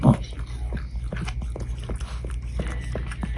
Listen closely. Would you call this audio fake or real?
real